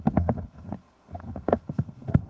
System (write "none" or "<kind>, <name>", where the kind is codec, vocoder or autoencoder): codec, SNAC